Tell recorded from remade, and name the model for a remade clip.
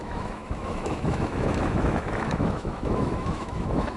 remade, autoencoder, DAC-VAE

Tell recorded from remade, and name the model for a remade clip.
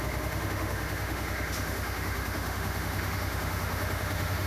remade, autoencoder, DAC-VAE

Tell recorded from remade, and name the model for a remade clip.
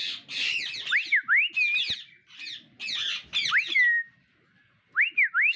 recorded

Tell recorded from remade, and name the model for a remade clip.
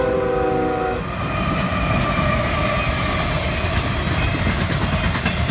recorded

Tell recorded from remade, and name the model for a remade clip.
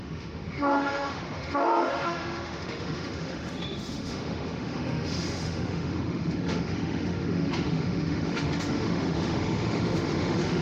remade, autoencoder, DAC-VAE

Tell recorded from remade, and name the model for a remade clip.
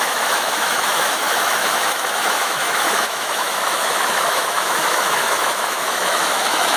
remade, autoencoder, DAC-VAE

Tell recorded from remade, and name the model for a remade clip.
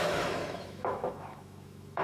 remade, autoencoder, DAC-VAE